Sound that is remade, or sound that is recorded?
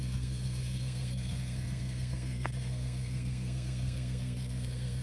remade